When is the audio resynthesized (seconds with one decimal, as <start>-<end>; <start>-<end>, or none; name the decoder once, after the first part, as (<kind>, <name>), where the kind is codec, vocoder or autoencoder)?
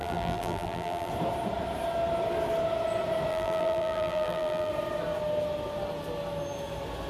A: 0.0-1.1 (vocoder, BigVGAN v2); 3.3-4.7